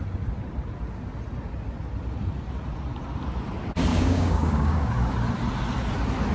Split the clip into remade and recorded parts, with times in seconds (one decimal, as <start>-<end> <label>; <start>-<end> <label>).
0.0-3.9 recorded; 3.9-4.9 remade; 4.9-6.3 recorded